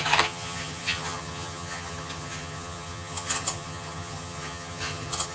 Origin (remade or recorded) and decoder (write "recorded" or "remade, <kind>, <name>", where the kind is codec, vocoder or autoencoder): remade, vocoder, HiFi-GAN